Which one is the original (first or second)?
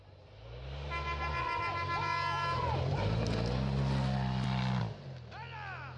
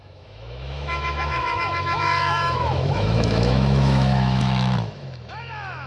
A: first